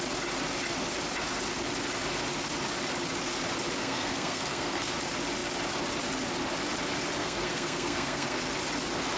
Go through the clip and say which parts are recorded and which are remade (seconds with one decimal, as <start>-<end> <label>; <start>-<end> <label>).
0.0-3.8 recorded; 3.8-4.9 remade; 4.9-7.2 recorded; 7.2-8.4 remade; 8.4-9.2 recorded